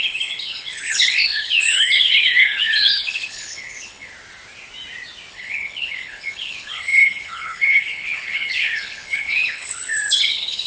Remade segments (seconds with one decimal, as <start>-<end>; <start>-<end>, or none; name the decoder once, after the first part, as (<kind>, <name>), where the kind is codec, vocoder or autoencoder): 0.0-4.1 (codec, HILCodec); 5.3-10.7